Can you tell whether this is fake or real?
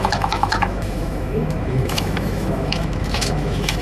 fake